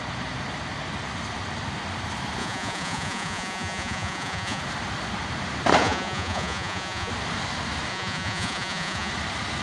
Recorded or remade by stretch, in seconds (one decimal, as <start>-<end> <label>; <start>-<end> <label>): 0.0-2.4 recorded; 2.4-4.6 remade; 4.6-5.8 recorded; 5.8-7.1 remade; 7.1-7.9 recorded; 7.9-9.1 remade; 9.1-9.6 recorded